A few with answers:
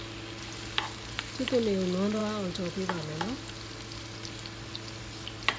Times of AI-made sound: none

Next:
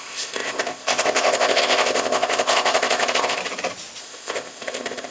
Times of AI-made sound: 0.0-3.4 (codec, ZipCodec); 4.0-5.1

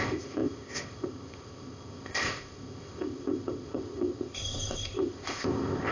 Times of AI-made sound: 0.0-5.9 (codec, ZipCodec)